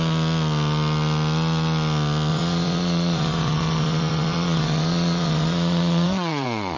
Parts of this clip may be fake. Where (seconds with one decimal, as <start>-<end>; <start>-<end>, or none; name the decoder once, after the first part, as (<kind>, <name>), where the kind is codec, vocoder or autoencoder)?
2.3-6.8 (vocoder, Vocos)